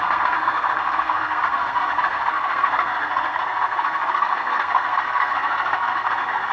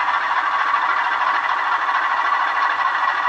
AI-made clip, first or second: first